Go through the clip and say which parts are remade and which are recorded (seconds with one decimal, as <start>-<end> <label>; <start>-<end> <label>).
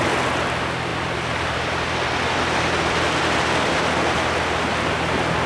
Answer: 0.0-0.9 recorded; 0.9-3.2 remade; 3.2-5.5 recorded